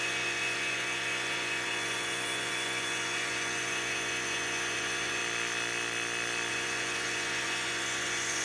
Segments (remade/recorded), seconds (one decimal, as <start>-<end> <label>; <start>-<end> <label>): 0.0-5.2 remade; 5.2-6.5 recorded; 6.5-8.4 remade